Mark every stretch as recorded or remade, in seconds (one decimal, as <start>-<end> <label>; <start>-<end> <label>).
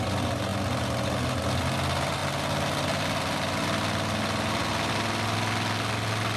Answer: 0.0-6.4 recorded